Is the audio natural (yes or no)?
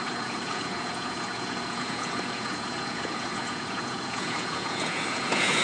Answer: no